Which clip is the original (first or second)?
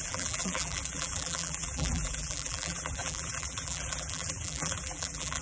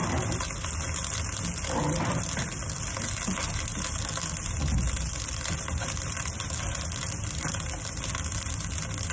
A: second